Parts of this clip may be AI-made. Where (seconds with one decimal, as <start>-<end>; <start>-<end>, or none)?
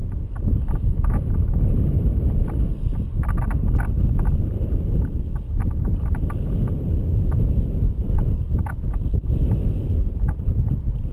none